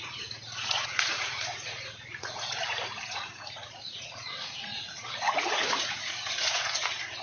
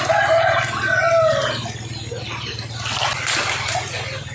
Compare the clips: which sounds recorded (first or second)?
second